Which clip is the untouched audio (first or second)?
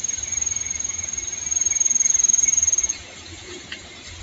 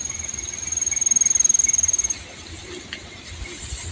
second